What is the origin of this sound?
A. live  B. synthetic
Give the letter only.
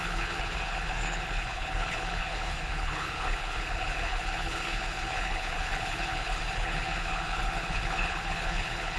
B